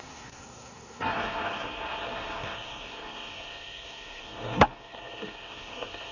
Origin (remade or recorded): remade